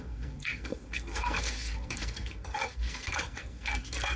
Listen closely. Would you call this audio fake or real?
fake